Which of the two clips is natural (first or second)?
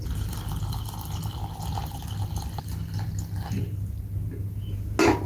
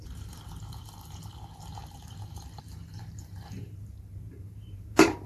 first